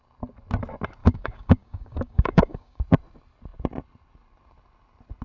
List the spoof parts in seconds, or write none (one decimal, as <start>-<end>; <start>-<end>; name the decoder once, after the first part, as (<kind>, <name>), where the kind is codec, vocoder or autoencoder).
1.0-2.8 (codec, DAC)